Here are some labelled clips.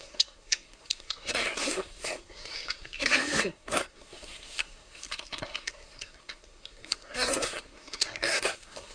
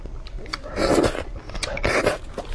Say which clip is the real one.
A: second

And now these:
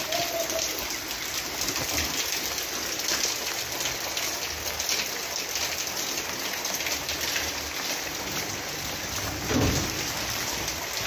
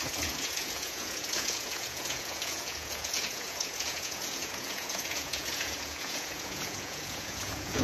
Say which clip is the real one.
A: first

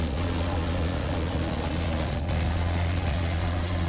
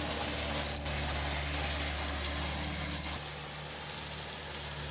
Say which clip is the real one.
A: second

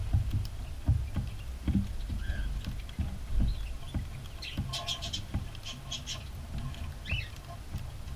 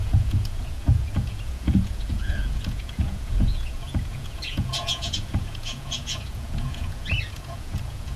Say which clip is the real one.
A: first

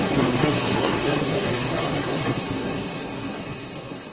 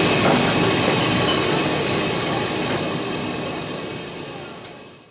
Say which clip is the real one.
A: second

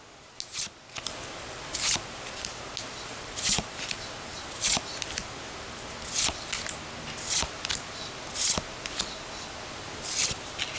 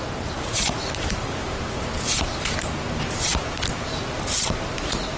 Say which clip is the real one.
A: first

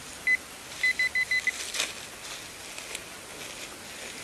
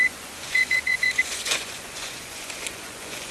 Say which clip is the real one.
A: first